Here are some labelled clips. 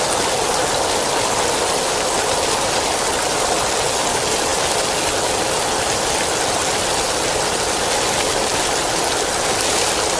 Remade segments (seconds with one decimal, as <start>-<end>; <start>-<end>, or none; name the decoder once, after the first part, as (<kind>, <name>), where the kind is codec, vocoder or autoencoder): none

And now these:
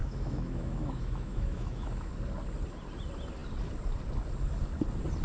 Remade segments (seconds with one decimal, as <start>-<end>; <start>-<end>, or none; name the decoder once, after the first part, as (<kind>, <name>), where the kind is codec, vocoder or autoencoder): 0.0-2.1 (autoencoder, DAC-VAE)

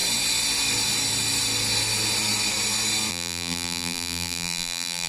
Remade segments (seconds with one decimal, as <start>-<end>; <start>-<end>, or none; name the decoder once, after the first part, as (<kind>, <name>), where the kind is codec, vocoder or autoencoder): 3.1-5.1 (vocoder, BigVGAN v2)